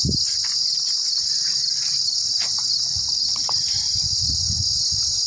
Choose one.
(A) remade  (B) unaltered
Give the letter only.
B